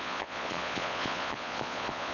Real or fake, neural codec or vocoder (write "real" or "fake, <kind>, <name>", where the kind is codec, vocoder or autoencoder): fake, vocoder, Vocos